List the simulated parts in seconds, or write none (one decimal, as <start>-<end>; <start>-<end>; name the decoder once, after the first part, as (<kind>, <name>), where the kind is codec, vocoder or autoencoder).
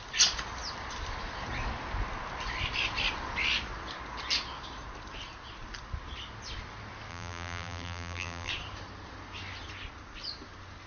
7.1-8.5 (vocoder, BigVGAN v2)